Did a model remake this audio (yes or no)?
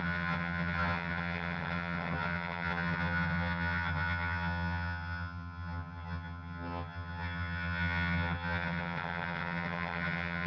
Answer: yes